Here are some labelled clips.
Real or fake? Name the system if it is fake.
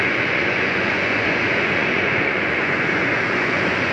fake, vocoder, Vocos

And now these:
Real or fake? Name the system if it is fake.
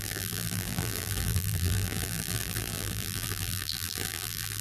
fake, vocoder, BigVGAN v2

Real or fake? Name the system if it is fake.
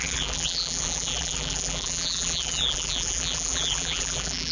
fake, vocoder, BigVGAN v2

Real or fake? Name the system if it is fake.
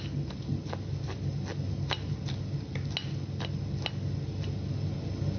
real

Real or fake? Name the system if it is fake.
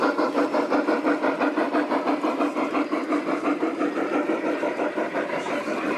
fake, vocoder, BigVGAN v2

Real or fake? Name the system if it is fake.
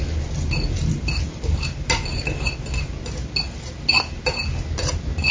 real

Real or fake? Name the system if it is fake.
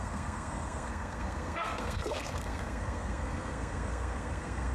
fake, codec, SNAC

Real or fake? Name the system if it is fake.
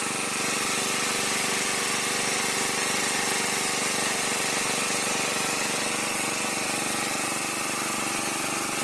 real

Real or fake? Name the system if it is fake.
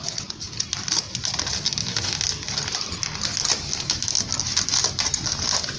real